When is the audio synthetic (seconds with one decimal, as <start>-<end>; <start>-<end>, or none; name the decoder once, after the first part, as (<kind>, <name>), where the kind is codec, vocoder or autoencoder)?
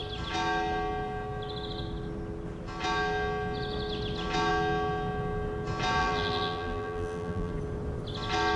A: 6.0-7.5 (vocoder, BigVGAN v2)